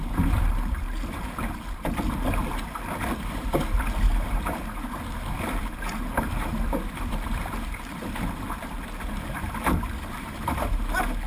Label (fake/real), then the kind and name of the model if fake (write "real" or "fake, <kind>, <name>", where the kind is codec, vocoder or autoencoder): fake, vocoder, BigVGAN v2